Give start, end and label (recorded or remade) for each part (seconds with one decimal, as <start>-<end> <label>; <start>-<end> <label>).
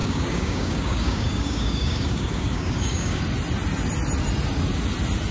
0.0-3.2 remade; 3.2-5.3 recorded